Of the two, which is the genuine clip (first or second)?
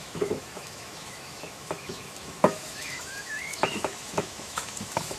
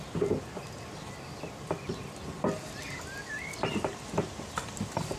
second